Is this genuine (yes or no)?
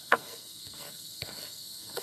no